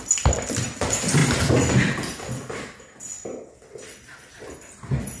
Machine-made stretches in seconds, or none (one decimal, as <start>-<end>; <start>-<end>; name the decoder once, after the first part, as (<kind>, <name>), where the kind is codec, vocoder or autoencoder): none

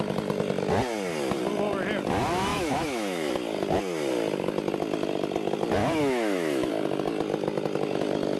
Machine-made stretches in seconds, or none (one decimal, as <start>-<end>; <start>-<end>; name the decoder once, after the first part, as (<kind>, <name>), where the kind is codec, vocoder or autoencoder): 2.5-3.3 (autoencoder, DAC-VAE); 5.8-6.7